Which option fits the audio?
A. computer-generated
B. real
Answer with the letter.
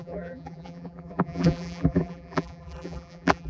A